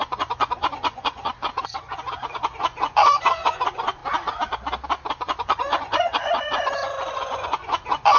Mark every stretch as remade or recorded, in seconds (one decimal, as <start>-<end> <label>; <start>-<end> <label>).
0.0-4.0 remade; 4.0-5.1 recorded; 5.1-8.2 remade

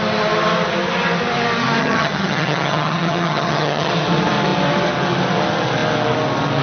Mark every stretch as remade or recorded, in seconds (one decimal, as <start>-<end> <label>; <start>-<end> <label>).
0.0-1.8 recorded; 1.8-3.9 remade; 3.9-6.6 recorded

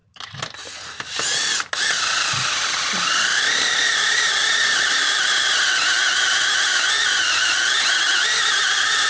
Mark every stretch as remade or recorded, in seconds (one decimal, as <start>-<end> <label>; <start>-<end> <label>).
0.0-4.4 recorded; 4.4-5.0 remade; 5.0-8.2 recorded; 8.2-9.1 remade

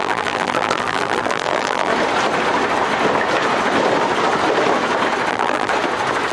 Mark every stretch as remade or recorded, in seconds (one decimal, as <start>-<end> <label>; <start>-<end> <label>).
0.0-1.9 remade; 1.9-5.3 recorded; 5.3-5.7 remade; 5.7-6.3 recorded

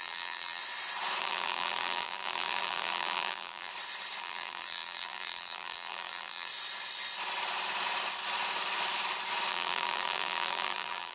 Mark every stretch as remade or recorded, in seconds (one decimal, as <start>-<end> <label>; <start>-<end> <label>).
0.0-0.6 remade; 0.6-1.2 recorded; 1.2-3.7 remade; 3.7-4.2 recorded; 4.2-6.5 remade; 6.5-9.5 recorded; 9.5-11.1 remade

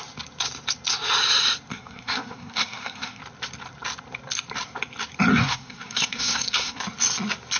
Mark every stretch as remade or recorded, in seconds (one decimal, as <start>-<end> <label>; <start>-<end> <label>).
0.0-1.7 recorded; 1.7-3.2 remade; 3.2-5.3 recorded; 5.3-6.8 remade; 6.8-7.6 recorded

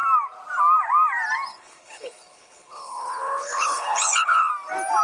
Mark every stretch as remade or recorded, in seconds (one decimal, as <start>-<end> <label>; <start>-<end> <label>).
0.0-1.5 recorded; 1.5-4.5 remade; 4.5-5.0 recorded